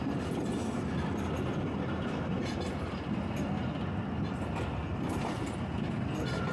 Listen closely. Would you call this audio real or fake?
real